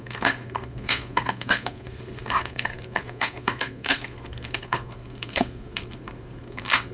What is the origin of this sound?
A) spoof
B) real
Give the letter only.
A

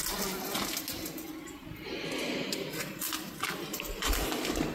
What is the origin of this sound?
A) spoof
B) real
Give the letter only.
B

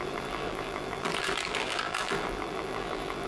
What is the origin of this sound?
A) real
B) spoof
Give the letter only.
B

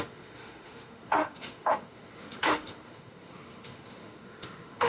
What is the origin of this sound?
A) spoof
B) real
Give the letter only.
A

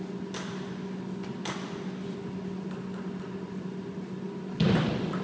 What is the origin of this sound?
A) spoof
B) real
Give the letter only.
B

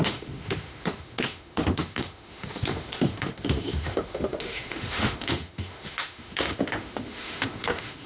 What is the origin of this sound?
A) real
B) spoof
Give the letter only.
B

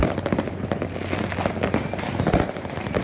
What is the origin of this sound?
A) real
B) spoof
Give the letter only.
A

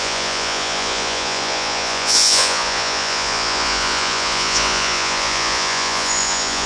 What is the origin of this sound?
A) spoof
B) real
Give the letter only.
A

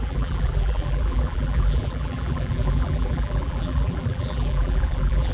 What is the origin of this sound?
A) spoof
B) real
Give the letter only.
A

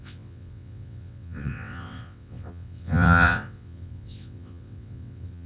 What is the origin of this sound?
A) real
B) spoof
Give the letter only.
B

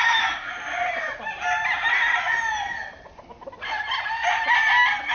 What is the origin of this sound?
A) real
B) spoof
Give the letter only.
A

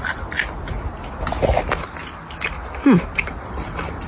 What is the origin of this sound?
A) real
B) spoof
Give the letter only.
A